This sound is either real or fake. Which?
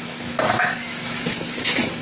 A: fake